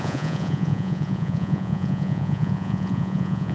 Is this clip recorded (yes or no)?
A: no